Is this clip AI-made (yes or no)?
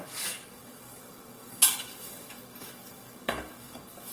yes